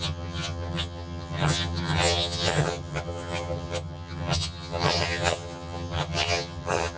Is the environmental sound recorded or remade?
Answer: remade